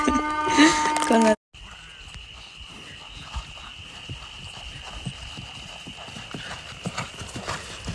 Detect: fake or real real